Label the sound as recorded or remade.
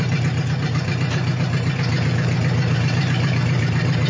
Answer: remade